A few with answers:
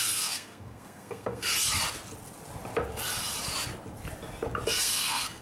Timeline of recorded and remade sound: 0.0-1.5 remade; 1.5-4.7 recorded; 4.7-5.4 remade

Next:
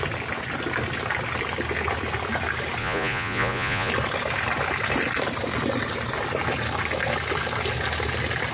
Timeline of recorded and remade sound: 0.0-2.8 recorded; 2.8-3.9 remade; 3.9-8.5 recorded

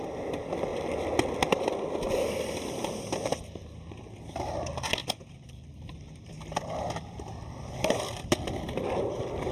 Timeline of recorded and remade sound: 0.0-9.5 remade